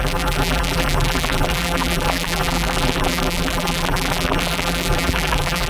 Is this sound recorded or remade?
remade